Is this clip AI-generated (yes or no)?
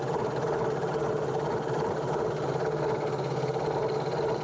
no